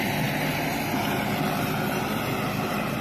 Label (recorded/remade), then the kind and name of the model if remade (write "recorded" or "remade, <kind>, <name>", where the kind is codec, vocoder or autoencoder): recorded